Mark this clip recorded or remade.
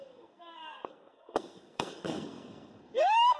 remade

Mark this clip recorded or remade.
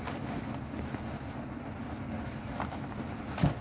recorded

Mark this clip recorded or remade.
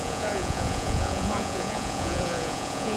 remade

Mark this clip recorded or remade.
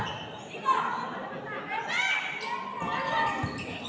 recorded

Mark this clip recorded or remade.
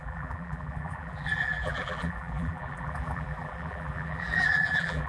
remade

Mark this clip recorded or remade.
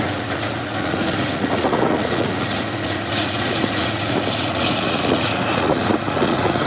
remade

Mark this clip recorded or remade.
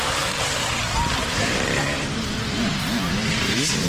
remade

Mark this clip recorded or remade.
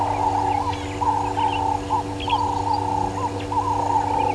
recorded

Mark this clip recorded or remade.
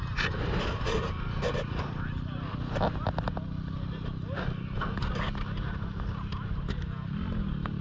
recorded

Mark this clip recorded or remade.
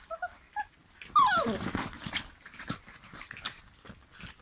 recorded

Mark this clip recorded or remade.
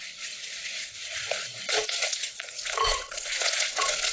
remade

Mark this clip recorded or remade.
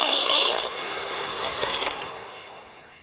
remade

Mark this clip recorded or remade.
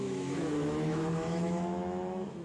remade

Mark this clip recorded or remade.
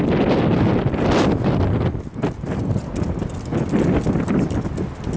recorded